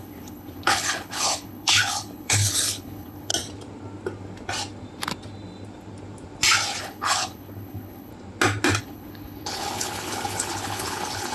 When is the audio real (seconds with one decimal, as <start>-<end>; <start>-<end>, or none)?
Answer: 3.3-6.8; 8.1-8.8